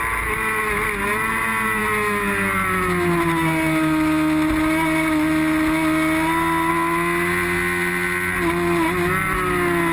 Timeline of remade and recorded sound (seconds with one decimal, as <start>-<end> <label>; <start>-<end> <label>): 0.0-9.9 recorded

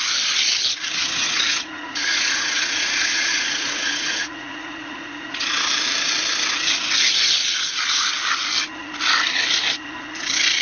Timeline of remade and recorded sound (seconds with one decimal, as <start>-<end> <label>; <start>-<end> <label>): 0.0-1.0 recorded; 1.0-5.4 remade; 5.4-10.6 recorded

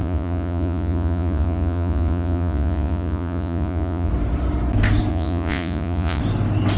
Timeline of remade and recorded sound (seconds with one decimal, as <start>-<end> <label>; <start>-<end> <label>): 0.0-4.1 remade; 4.1-5.1 recorded; 5.1-6.2 remade; 6.2-6.8 recorded

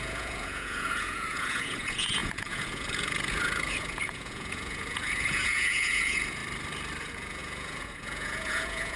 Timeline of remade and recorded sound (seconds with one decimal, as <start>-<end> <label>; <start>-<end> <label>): 0.0-6.4 remade; 6.4-7.0 recorded; 7.0-9.0 remade

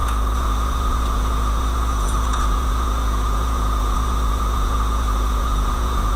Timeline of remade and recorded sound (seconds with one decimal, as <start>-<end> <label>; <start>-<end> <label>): 0.0-6.2 remade

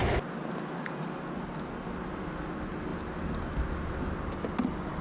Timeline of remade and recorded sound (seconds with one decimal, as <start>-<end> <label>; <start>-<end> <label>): 0.0-5.0 recorded

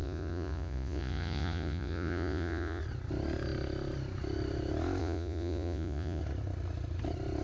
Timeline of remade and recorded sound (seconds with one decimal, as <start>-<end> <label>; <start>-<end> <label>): 0.0-2.8 remade; 2.8-5.0 recorded; 5.0-6.2 remade; 6.2-7.4 recorded

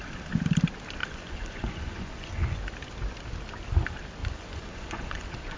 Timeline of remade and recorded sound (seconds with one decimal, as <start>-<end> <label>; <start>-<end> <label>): 0.0-1.0 recorded; 1.0-2.6 remade; 2.6-4.2 recorded; 4.2-5.6 remade